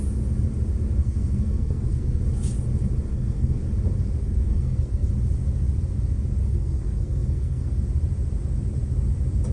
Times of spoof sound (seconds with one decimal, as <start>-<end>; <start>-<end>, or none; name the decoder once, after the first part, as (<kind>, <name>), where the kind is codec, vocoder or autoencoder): 1.0-2.2 (codec, SNAC); 3.1-3.6; 4.2-5.1; 6.4-7.8